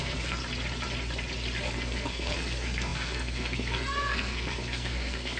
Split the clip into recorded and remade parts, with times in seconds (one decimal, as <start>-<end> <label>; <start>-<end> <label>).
0.0-0.4 remade; 0.4-1.7 recorded; 1.7-5.4 remade